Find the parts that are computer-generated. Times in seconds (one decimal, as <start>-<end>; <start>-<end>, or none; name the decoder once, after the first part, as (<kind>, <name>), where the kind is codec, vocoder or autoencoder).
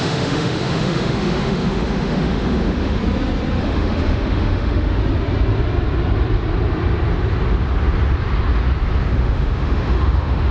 0.0-3.0 (autoencoder, DAC-VAE); 3.6-5.0; 9.1-10.5